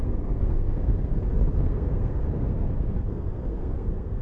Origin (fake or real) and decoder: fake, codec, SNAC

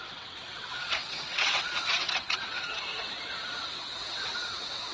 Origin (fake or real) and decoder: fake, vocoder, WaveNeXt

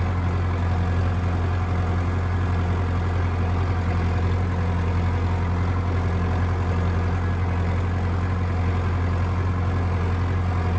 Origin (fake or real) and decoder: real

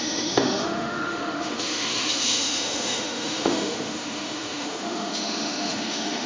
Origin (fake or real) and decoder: fake, autoencoder, DAC-VAE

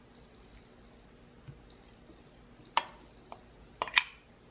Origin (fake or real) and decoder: real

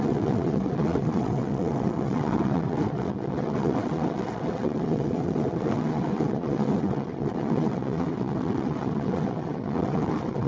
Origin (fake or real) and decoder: fake, vocoder, WaveNeXt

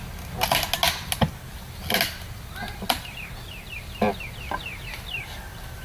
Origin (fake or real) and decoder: real